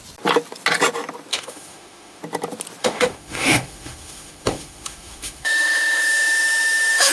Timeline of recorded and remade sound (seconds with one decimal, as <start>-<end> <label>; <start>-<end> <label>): 0.0-1.3 recorded; 1.3-2.2 remade; 2.2-2.8 recorded; 2.8-7.1 remade